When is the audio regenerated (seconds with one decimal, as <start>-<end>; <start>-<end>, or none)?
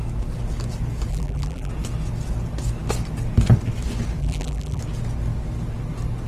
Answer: 1.1-1.7; 4.2-4.8